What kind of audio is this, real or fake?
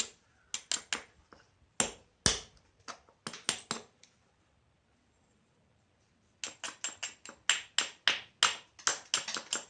real